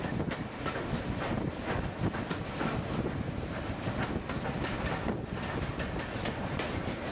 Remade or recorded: recorded